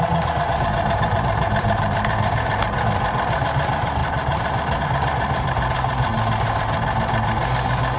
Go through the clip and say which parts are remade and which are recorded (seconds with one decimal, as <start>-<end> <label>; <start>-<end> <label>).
0.0-6.1 remade; 6.1-8.0 recorded